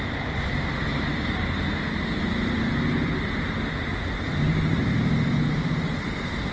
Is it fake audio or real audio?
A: real